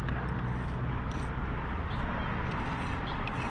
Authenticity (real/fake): real